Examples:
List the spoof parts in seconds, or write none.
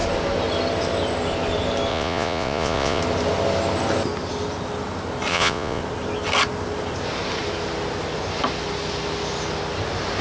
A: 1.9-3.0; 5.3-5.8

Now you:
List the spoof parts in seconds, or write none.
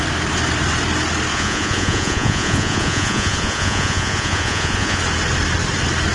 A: 1.3-5.0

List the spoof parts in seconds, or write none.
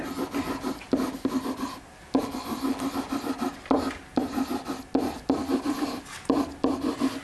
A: none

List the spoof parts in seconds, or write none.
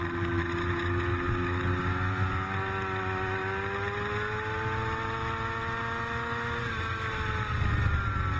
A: none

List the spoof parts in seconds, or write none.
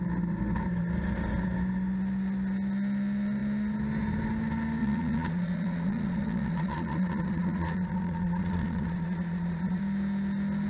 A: 4.8-9.8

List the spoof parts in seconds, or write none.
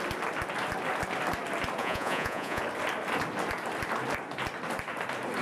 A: 1.8-2.6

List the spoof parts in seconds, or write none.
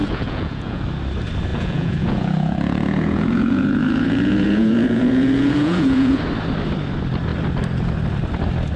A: 0.0-0.8; 1.5-6.2